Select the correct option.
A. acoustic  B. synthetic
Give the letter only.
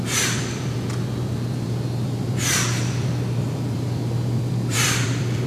B